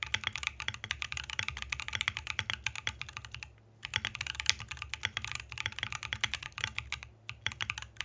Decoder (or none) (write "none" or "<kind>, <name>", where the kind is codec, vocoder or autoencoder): none